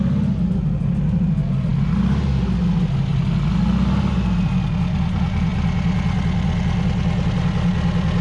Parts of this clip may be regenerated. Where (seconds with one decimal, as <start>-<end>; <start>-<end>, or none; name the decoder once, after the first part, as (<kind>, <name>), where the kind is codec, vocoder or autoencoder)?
none